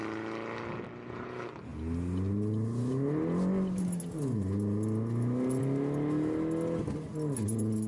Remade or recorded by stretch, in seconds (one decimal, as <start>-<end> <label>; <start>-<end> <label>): 0.0-7.9 recorded